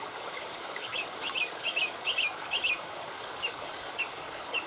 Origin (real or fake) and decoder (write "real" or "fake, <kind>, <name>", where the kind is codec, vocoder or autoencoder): fake, codec, DAC